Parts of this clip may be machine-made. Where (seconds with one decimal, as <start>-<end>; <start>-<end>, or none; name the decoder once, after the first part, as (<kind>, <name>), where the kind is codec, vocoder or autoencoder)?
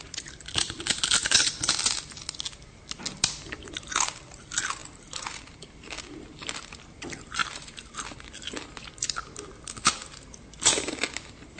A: none